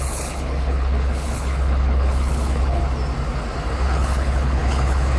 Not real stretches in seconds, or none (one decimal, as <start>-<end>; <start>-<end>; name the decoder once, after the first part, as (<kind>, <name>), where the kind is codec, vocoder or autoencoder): 0.0-2.8 (codec, HILCodec); 3.7-5.2